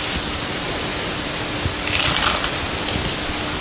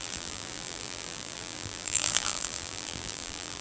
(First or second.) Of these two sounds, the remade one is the second